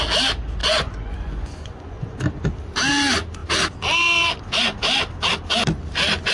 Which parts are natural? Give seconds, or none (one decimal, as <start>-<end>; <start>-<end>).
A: 0.0-0.6; 2.2-6.3